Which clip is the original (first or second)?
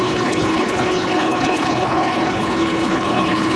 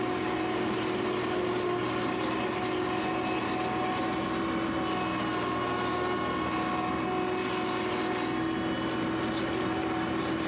second